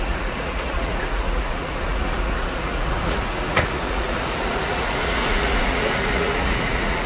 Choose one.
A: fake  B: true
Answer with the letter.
A